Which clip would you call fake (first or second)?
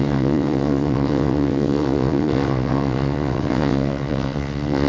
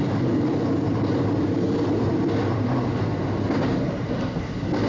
first